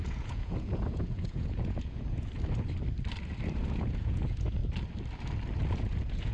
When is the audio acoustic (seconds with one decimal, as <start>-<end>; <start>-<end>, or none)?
2.3-3.6; 4.6-5.7